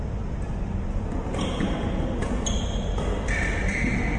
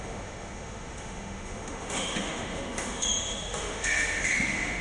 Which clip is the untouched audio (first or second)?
first